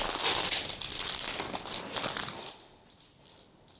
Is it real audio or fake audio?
real